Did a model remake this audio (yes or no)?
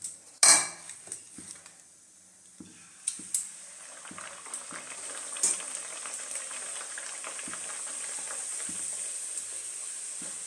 no